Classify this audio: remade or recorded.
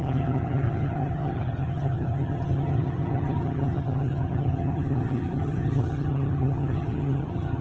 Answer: remade